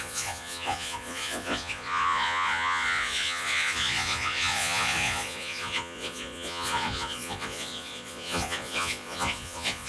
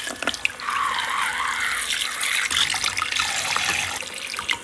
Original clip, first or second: second